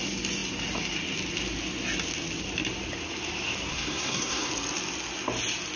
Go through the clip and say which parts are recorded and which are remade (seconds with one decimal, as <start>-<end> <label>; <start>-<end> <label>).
0.0-3.7 recorded; 3.7-4.5 remade; 4.5-5.8 recorded